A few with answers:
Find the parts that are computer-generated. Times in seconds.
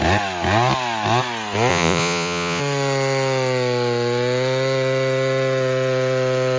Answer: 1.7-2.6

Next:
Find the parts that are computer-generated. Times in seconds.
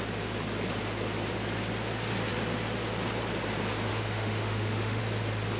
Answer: 3.9-5.0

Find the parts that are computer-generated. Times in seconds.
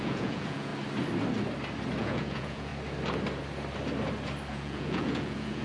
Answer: 0.0-0.7; 2.0-2.7; 4.5-5.6